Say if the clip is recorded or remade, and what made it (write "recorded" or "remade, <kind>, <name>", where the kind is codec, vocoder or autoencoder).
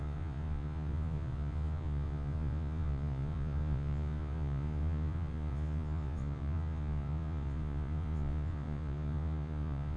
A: remade, vocoder, Vocos